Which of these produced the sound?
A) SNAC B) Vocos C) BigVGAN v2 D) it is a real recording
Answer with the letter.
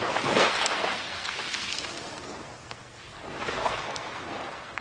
A